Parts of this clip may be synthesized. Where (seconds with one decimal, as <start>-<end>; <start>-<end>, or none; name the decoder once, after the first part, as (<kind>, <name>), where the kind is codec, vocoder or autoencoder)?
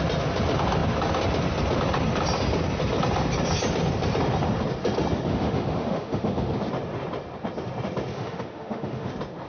5.3-6.5 (autoencoder, DAC-VAE); 8.1-9.1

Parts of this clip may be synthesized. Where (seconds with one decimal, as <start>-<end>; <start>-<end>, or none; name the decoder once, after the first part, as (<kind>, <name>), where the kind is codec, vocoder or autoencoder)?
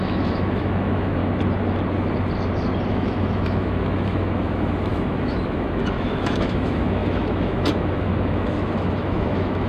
0.0-1.2 (autoencoder, DAC-VAE); 2.9-9.7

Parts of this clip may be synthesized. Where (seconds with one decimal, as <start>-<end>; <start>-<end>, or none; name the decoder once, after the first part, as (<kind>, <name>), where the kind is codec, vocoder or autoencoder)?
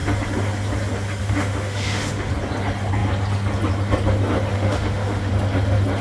1.2-2.3 (autoencoder, DAC-VAE); 4.5-5.3